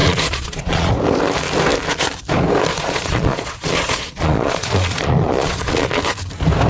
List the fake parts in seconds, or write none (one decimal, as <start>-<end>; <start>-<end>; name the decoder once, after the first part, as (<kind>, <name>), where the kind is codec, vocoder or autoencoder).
0.0-0.9 (vocoder, Vocos); 2.7-6.0